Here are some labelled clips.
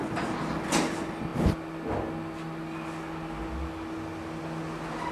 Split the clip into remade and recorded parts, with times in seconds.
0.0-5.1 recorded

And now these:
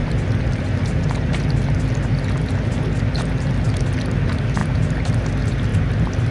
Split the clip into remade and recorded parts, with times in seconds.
0.0-6.3 recorded

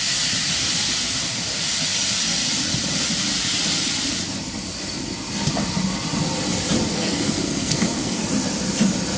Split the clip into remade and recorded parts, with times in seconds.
0.0-6.9 recorded; 6.9-8.2 remade; 8.2-9.2 recorded

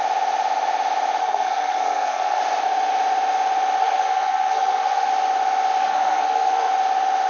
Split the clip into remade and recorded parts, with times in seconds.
0.0-1.2 recorded; 1.2-2.4 remade; 2.4-3.8 recorded; 3.8-5.1 remade; 5.1-5.8 recorded; 5.8-6.7 remade; 6.7-7.3 recorded

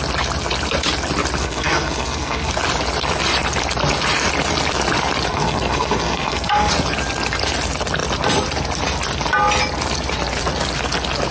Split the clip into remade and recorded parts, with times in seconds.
0.0-1.4 recorded; 1.4-2.5 remade; 2.5-5.3 recorded; 5.3-6.7 remade; 6.7-11.3 recorded